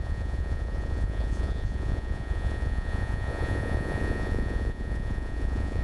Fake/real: fake